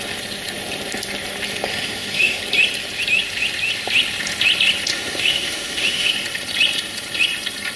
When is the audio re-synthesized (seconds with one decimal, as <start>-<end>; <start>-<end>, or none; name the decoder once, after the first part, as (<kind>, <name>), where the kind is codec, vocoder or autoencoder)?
1.7-2.4 (autoencoder, DAC-VAE); 4.9-6.1